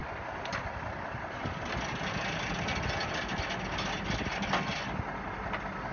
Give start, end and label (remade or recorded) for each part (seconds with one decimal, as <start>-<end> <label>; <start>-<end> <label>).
0.0-5.9 recorded